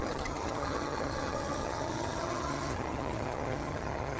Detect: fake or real fake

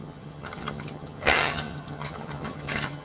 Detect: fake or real fake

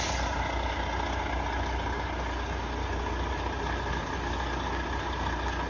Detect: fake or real real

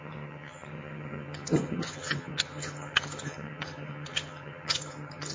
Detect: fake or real fake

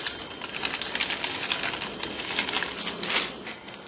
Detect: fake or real real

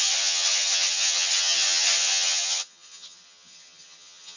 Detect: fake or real fake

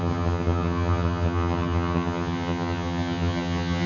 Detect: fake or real fake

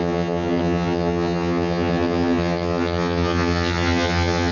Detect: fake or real fake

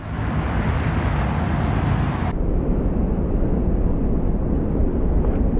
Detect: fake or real real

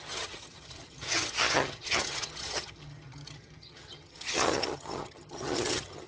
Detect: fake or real fake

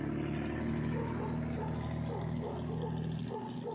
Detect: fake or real real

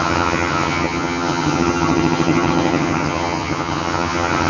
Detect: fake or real fake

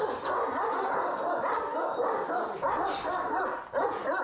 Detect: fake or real real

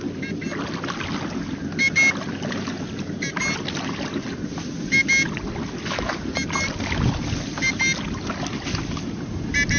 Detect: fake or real real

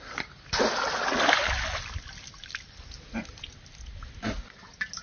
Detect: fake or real real